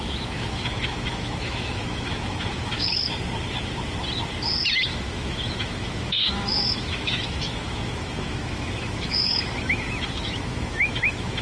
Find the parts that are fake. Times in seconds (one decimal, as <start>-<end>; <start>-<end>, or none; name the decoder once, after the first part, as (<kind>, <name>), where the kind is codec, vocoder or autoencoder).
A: 0.0-3.0 (autoencoder, DAC-VAE); 4.7-11.4